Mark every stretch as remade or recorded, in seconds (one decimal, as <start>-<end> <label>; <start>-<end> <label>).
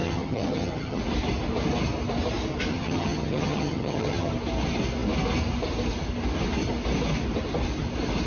0.0-1.0 remade; 1.0-2.7 recorded; 2.7-4.3 remade; 4.3-8.3 recorded